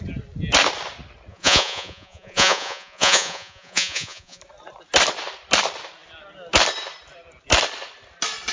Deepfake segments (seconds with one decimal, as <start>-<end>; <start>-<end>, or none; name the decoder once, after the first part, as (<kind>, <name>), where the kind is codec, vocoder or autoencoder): 1.3-4.4 (vocoder, Vocos)